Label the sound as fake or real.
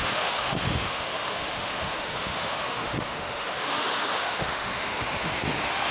fake